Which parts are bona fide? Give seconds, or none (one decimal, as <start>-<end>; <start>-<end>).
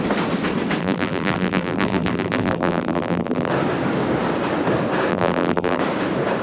0.0-0.8; 3.5-5.1; 5.8-6.4